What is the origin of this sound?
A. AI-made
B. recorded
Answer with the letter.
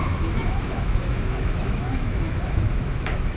A